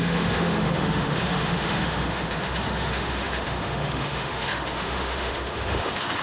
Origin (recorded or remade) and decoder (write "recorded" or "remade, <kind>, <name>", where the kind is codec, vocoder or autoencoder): remade, autoencoder, DAC-VAE